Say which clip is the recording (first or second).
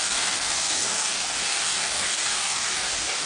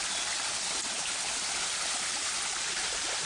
second